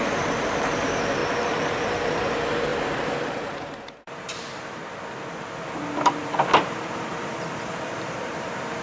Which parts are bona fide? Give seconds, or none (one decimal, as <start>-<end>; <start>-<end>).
1.2-2.0; 4.8-6.6